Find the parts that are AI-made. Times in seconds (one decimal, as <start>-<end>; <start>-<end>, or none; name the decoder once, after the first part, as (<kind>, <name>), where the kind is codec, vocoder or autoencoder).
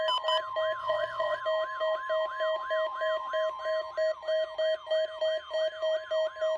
0.8-1.4 (vocoder, WaveNeXt)